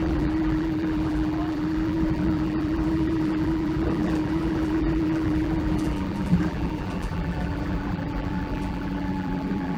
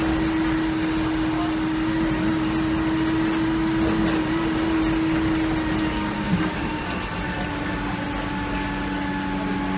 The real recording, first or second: second